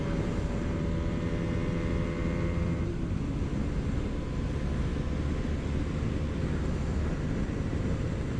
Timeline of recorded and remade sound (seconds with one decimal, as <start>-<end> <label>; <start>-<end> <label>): 0.0-4.9 remade; 4.9-6.6 recorded; 6.6-8.4 remade